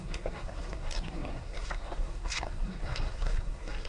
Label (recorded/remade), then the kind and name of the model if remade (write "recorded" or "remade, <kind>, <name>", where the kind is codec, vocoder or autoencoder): remade, codec, SNAC